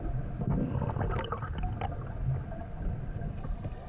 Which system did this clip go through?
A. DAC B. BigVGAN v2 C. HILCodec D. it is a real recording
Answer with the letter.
D